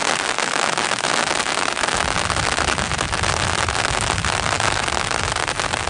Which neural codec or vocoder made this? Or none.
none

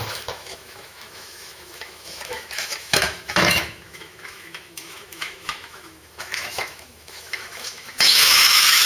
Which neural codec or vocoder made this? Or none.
autoencoder, DAC-VAE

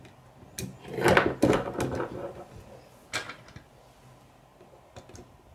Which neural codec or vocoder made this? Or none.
none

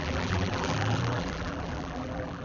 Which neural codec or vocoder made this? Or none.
vocoder, BigVGAN v2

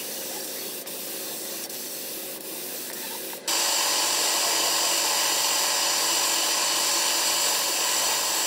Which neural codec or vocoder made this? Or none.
none